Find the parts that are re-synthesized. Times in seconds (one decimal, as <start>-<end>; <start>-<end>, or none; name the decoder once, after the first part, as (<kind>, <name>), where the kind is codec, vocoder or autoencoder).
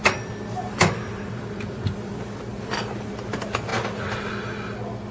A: 0.0-3.1 (vocoder, BigVGAN v2)